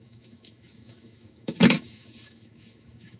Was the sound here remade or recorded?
remade